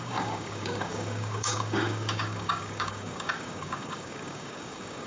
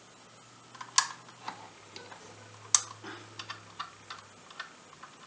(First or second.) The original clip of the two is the second